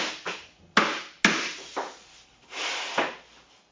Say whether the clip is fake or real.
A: real